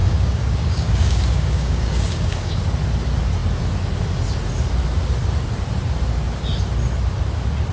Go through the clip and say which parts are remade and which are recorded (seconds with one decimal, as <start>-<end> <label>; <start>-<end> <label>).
0.0-2.5 remade; 2.5-7.7 recorded